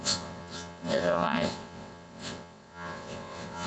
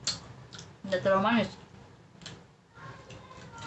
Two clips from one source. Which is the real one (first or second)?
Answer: second